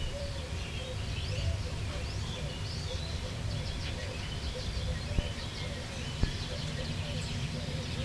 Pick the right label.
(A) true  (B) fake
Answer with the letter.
B